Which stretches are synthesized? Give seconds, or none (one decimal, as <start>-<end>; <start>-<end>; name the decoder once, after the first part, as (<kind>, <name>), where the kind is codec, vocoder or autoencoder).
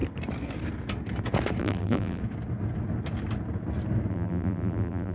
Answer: 1.6-2.2 (vocoder, BigVGAN v2); 4.1-5.1